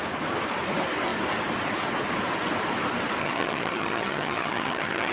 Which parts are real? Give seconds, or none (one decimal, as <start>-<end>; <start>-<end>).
0.0-3.2